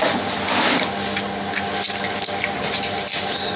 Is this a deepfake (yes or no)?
no